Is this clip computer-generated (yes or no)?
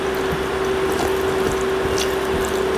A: no